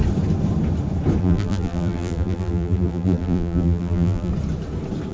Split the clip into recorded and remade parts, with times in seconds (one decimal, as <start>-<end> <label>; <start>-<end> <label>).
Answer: 0.0-1.2 recorded; 1.2-4.3 remade; 4.3-5.1 recorded